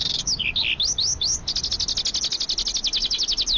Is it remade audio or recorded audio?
recorded